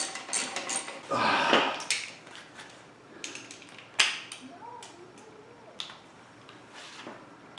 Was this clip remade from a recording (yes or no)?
no